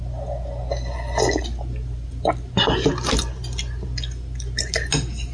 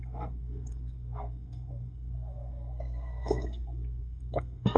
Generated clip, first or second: second